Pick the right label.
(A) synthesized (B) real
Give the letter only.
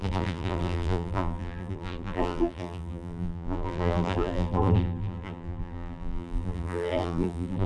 A